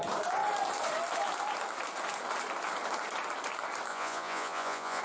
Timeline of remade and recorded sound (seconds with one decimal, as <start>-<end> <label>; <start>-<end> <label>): 0.0-3.9 recorded; 3.9-5.0 remade